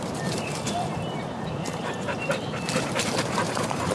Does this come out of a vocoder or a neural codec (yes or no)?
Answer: yes